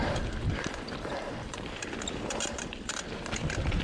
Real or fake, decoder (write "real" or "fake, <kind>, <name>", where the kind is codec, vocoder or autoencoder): fake, vocoder, BigVGAN v2